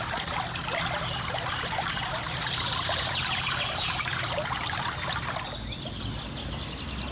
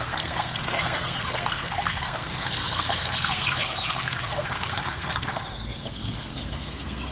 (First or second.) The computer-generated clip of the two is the second